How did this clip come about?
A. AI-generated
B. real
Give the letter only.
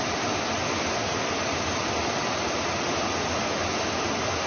B